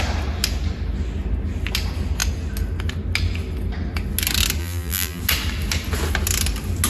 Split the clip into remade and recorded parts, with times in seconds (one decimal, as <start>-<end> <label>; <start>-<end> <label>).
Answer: 0.0-4.6 recorded; 4.6-5.2 remade; 5.2-6.9 recorded